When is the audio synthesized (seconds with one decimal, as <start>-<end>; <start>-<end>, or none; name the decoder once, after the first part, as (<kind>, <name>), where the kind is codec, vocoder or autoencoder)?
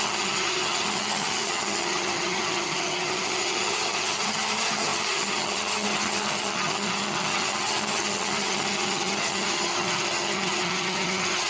0.0-11.5 (vocoder, HiFi-GAN)